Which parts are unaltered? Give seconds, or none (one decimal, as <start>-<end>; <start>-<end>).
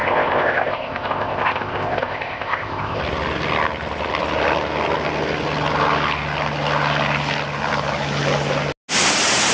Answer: 3.0-9.5